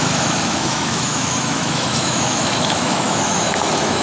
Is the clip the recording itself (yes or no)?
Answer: no